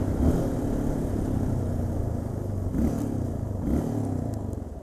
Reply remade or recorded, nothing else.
recorded